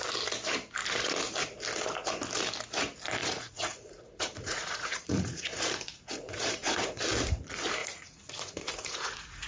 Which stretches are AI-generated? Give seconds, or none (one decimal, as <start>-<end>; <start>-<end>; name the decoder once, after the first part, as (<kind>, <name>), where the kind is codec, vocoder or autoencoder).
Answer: 3.2-7.0 (vocoder, Vocos); 7.8-9.5